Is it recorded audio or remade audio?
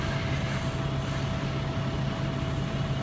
recorded